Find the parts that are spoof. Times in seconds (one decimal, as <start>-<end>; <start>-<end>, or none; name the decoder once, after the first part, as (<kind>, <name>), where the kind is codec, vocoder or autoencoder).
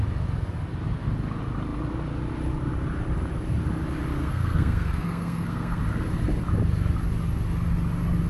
4.2-5.8 (codec, SNAC)